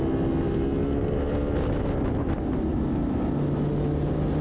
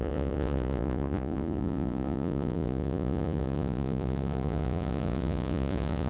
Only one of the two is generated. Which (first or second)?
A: second